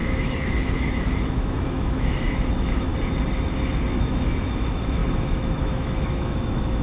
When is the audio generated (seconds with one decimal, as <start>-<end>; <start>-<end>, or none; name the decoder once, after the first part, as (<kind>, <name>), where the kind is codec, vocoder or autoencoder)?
0.0-2.9 (autoencoder, DAC-VAE); 3.9-6.8